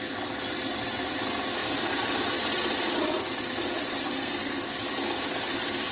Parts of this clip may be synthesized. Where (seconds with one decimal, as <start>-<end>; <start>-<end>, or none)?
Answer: 4.0-4.7